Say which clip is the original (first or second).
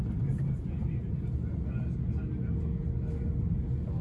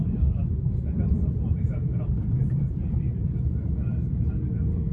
first